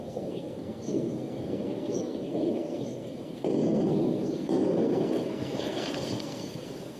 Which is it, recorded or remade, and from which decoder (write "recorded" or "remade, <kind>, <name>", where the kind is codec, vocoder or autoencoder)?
remade, codec, SNAC